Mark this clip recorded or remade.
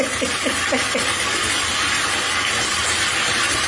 recorded